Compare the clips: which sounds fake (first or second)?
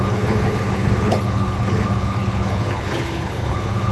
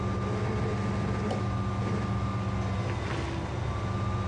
first